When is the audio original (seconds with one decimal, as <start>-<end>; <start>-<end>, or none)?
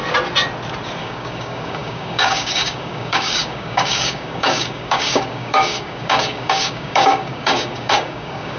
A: 0.0-1.0